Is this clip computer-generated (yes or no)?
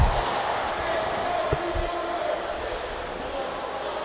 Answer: no